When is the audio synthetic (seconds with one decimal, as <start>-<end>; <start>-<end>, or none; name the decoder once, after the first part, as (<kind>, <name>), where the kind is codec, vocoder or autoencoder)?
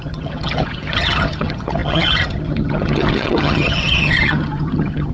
0.0-5.1 (vocoder, HiFi-GAN)